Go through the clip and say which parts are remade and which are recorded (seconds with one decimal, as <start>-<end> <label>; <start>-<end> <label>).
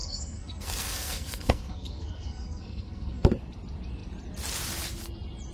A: 0.0-3.3 remade; 3.3-5.5 recorded